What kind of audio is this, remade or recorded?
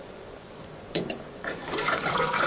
remade